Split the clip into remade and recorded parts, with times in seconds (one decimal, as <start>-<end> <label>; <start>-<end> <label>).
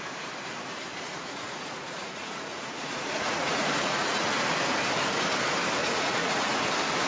0.0-0.9 recorded; 0.9-4.4 remade; 4.4-5.8 recorded; 5.8-6.6 remade; 6.6-7.1 recorded